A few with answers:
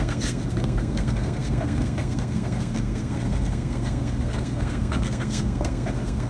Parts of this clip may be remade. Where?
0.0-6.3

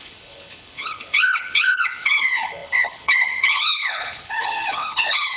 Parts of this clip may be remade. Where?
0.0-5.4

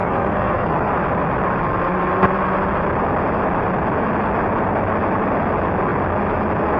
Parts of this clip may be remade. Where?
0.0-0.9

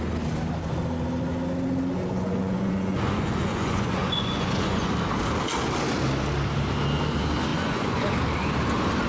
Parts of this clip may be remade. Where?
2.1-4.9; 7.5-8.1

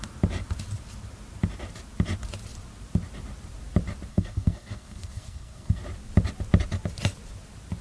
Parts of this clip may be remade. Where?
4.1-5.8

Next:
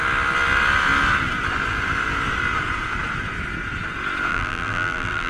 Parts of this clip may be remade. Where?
4.3-5.3